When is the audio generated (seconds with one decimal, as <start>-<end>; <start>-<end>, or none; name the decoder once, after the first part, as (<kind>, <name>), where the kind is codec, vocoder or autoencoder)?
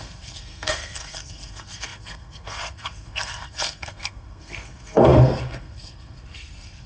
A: 0.0-6.9 (codec, SNAC)